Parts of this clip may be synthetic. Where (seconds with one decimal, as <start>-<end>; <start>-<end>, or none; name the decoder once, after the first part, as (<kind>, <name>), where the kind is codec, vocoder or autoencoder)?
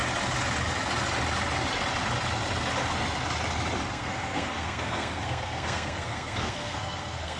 3.9-7.4 (codec, SNAC)